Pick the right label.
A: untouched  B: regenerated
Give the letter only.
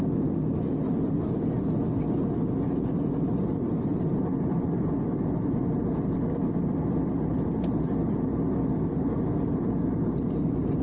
A